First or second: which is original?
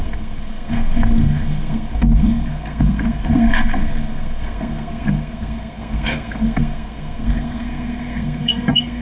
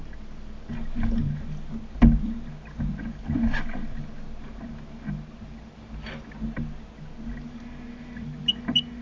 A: second